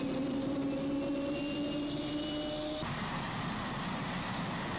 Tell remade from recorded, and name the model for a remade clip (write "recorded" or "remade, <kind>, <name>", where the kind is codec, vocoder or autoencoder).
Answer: recorded